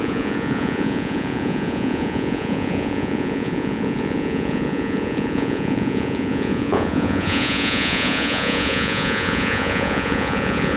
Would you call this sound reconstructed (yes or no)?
yes